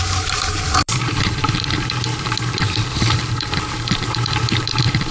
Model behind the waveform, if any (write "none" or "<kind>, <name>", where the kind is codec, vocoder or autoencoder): vocoder, BigVGAN v2